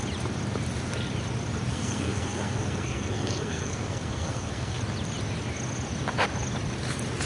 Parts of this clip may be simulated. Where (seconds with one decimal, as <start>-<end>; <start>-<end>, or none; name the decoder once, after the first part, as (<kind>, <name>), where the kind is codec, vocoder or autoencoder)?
1.7-4.8 (codec, SNAC)

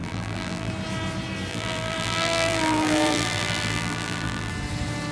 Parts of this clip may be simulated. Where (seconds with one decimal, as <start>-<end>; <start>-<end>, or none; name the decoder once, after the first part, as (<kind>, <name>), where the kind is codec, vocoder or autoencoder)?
0.0-0.7 (vocoder, BigVGAN v2); 1.5-4.5

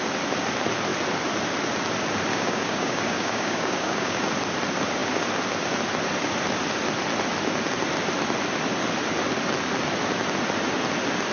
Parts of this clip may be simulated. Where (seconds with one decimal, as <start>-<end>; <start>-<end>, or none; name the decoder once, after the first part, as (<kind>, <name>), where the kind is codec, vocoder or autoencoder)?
2.3-4.2 (codec, DAC)

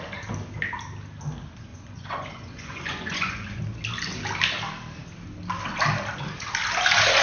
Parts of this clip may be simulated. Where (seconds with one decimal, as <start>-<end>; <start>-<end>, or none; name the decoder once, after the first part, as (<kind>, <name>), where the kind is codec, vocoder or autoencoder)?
1.7-3.6 (vocoder, Vocos)

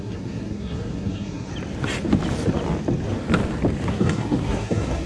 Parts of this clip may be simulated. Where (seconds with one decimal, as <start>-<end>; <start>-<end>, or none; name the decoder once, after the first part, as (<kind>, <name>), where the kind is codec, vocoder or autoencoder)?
0.0-1.5 (codec, SNAC); 3.9-5.1

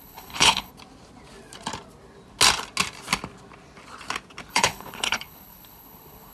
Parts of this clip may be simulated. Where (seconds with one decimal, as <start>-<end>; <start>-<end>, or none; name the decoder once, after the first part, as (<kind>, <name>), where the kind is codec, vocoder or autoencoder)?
0.0-0.7 (codec, HILCodec); 4.5-6.3

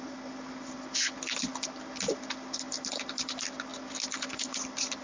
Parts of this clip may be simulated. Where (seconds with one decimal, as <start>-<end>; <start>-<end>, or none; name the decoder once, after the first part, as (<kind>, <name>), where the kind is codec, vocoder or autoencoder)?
none